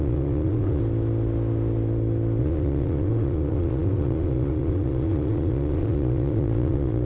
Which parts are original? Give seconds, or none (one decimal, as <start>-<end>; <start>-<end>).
0.8-2.4